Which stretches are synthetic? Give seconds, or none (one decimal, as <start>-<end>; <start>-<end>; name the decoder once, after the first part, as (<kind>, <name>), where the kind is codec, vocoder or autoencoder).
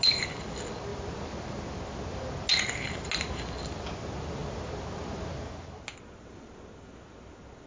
none